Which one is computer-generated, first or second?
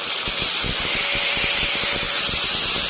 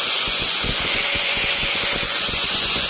second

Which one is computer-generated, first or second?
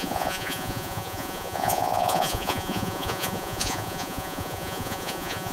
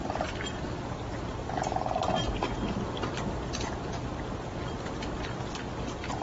first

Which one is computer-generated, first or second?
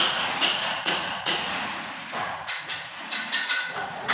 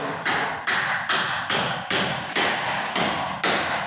first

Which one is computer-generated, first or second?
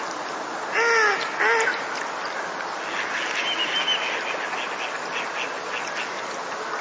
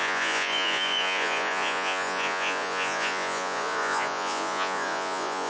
second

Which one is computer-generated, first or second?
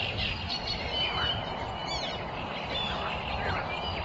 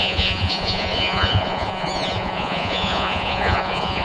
second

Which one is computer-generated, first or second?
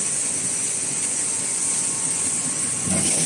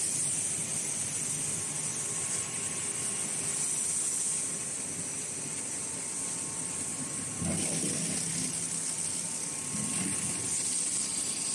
first